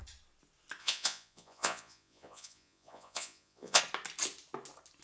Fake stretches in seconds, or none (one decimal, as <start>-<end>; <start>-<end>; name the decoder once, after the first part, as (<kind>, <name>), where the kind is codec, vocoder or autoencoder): 0.8-3.8 (vocoder, Vocos)